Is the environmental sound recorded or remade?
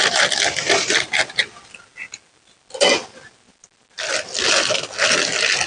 recorded